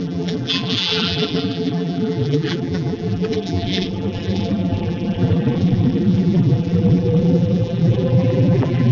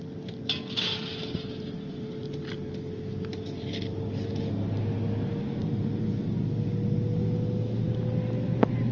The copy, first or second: first